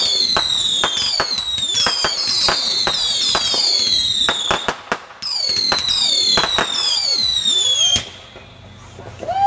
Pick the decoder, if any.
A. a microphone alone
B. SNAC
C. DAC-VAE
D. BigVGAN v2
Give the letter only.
A